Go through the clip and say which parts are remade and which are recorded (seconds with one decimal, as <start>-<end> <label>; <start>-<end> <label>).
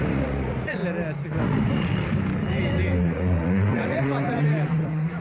0.0-0.8 remade; 0.8-1.4 recorded; 1.4-1.9 remade; 1.9-3.0 recorded; 3.0-5.2 remade